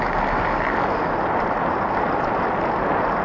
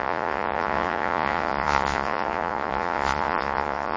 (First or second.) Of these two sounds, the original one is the first